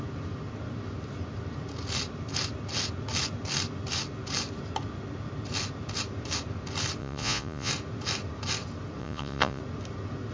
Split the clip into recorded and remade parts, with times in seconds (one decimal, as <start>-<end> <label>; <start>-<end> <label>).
0.0-7.0 recorded; 7.0-7.7 remade; 7.7-9.0 recorded; 9.0-9.6 remade; 9.6-10.3 recorded